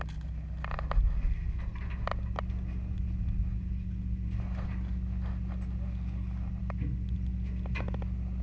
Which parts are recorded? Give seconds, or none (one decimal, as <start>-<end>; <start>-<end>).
0.0-8.4